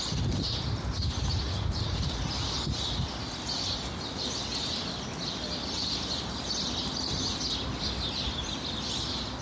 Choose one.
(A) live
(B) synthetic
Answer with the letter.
A